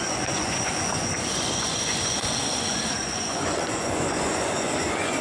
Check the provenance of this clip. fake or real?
fake